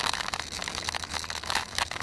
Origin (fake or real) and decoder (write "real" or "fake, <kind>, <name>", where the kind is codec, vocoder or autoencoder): fake, autoencoder, DAC-VAE